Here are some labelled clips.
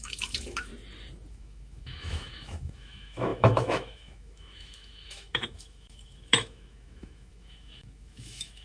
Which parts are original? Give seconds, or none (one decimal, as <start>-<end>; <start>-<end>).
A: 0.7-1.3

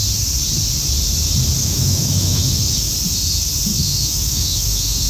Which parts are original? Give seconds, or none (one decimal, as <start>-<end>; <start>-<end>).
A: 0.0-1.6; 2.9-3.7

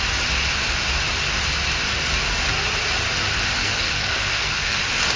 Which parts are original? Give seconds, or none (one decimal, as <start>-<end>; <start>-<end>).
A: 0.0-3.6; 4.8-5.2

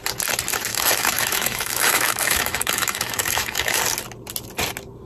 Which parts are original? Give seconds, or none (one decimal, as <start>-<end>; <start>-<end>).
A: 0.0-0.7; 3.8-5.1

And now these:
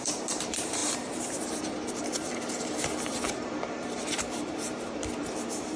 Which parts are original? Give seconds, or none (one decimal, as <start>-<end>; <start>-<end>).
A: 2.3-3.0

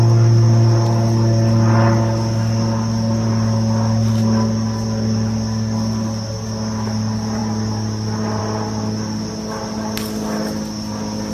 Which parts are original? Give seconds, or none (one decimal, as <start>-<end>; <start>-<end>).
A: 0.0-11.3